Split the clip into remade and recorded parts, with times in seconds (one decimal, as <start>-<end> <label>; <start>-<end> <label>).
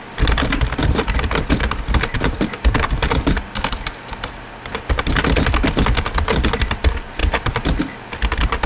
0.0-8.7 recorded